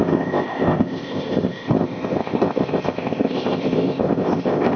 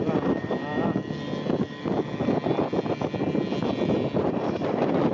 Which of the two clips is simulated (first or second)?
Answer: first